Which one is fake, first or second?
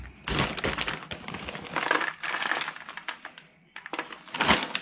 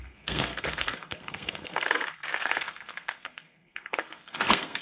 second